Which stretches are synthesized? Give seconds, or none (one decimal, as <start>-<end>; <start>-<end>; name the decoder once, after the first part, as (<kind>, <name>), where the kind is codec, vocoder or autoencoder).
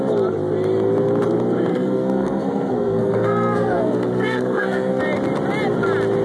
1.7-5.0 (codec, SNAC)